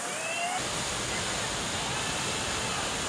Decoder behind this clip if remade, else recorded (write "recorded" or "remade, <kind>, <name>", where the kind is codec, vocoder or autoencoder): recorded